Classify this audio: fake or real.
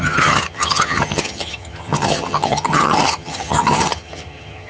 fake